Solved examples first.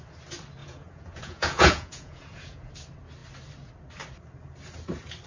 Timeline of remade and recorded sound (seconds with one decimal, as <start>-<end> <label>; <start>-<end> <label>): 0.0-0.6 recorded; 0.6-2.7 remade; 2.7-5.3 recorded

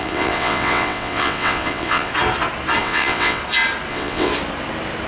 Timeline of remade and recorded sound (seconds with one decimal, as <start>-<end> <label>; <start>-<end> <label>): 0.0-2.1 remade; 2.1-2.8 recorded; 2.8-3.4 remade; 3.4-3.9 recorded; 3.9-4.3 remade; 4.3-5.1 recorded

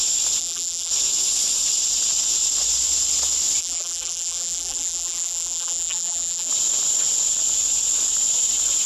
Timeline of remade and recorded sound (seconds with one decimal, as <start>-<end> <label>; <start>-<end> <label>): 0.0-0.4 recorded; 0.4-0.9 remade; 0.9-3.6 recorded; 3.6-6.5 remade; 6.5-8.9 recorded

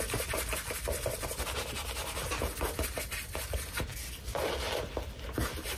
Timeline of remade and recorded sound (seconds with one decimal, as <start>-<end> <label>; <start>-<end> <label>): 0.0-5.8 recorded

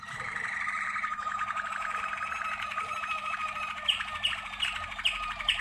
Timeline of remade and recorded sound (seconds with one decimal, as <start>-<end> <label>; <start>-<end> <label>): 0.0-5.6 remade